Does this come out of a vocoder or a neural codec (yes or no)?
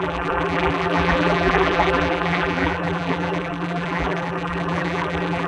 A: yes